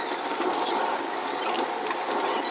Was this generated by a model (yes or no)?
no